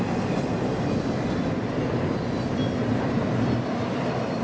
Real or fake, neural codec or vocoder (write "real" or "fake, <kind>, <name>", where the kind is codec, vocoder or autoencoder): real